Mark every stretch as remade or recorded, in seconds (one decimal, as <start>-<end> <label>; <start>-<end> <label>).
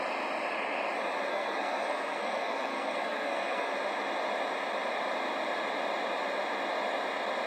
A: 0.0-1.3 recorded; 1.3-3.7 remade; 3.7-7.5 recorded